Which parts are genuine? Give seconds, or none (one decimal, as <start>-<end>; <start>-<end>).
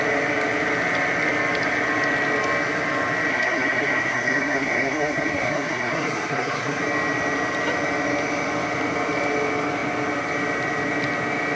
0.0-3.3; 6.8-11.6